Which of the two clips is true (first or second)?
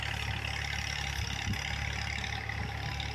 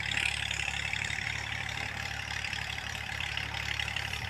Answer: first